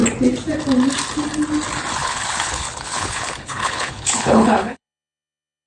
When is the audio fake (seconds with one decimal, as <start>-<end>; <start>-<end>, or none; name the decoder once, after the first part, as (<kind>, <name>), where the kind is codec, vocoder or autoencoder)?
2.0-5.7 (codec, HILCodec)